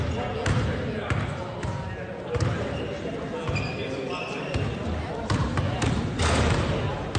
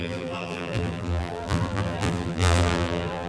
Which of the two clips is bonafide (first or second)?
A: first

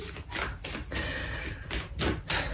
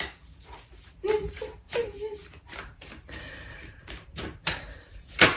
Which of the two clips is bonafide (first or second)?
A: first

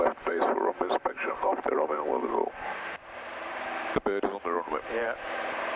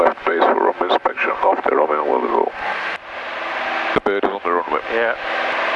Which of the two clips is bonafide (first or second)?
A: second